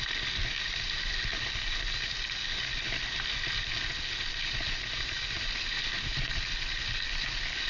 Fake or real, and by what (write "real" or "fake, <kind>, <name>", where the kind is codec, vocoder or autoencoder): real